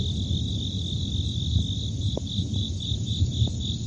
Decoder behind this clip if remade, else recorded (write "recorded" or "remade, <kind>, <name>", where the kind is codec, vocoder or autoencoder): recorded